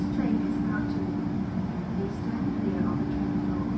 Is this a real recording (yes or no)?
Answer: yes